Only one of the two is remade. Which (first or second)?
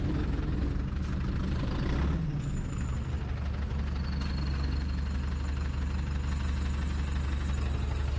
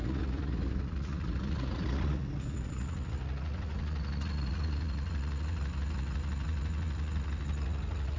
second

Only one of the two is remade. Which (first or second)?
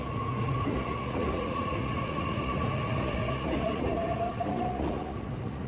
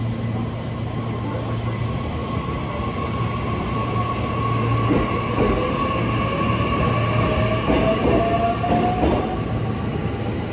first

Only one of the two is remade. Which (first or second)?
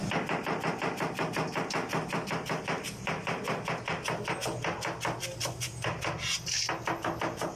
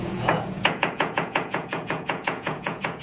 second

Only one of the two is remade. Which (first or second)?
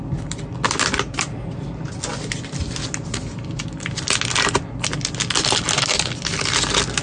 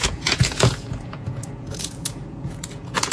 second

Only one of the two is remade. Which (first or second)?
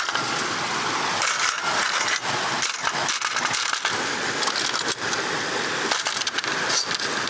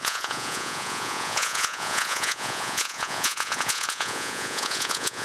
second